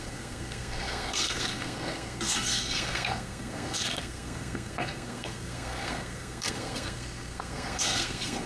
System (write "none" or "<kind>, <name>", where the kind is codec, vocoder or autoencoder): codec, SNAC